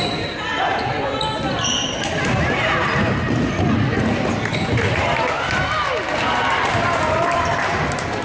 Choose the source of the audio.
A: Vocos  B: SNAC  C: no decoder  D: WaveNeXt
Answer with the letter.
C